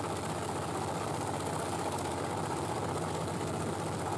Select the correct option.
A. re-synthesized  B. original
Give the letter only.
A